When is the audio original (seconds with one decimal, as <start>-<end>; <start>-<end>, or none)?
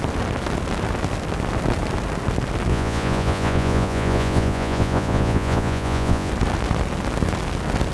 0.0-2.7; 6.3-7.9